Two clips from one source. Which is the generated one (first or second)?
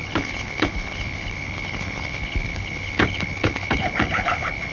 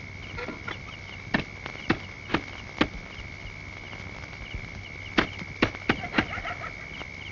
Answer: first